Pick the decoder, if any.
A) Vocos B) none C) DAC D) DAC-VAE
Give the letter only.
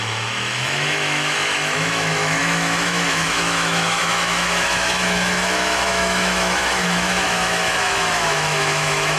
D